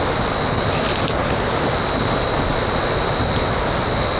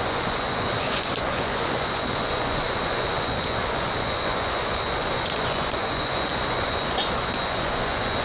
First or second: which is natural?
first